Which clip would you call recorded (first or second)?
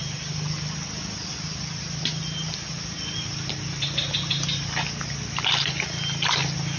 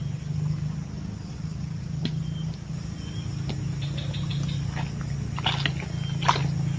second